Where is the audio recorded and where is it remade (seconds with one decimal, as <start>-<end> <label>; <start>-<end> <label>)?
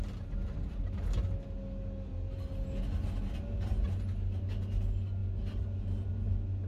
0.0-6.7 recorded